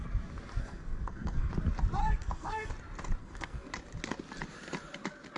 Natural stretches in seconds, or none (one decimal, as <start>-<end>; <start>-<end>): 0.0-0.6; 1.5-2.0; 2.7-3.2; 3.7-5.4